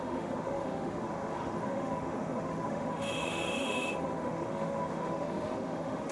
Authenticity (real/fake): fake